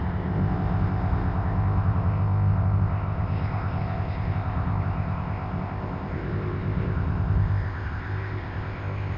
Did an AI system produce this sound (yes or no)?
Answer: yes